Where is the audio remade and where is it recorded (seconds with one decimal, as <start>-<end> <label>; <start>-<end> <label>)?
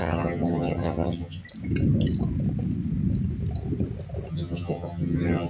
0.0-1.4 remade; 1.4-4.3 recorded; 4.3-5.5 remade